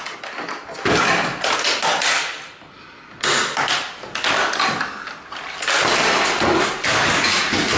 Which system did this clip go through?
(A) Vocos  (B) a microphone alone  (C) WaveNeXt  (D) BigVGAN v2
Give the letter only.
B